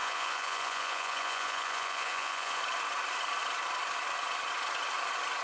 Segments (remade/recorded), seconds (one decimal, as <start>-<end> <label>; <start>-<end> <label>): 0.0-2.6 remade; 2.6-5.4 recorded